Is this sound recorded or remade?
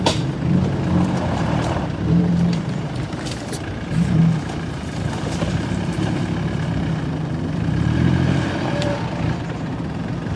remade